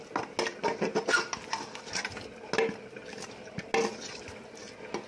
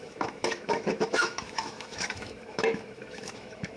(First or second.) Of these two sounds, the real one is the first